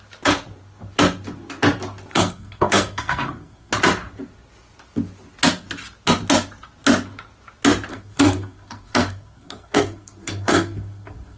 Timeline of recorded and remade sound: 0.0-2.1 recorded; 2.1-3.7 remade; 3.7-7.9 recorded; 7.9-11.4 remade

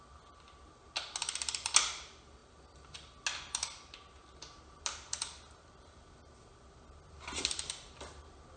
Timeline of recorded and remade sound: 0.0-8.6 recorded